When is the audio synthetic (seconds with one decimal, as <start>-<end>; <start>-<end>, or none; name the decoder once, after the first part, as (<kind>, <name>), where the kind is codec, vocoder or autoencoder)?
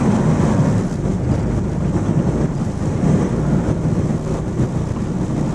none